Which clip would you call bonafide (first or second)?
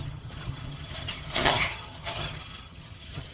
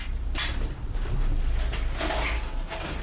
second